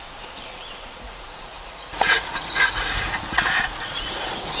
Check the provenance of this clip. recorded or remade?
remade